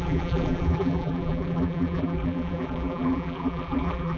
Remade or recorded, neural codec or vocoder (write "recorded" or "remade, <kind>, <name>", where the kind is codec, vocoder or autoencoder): remade, vocoder, BigVGAN v2